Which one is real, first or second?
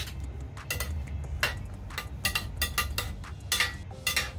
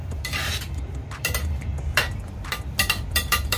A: first